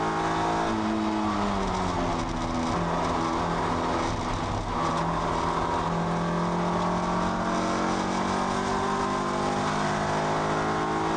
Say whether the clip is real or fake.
real